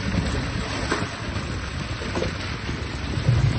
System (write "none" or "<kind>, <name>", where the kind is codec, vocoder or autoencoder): none